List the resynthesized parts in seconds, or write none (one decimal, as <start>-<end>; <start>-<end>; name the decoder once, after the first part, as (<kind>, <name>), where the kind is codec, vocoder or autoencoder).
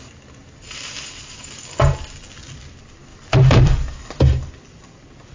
0.4-1.9 (vocoder, BigVGAN v2); 3.1-4.5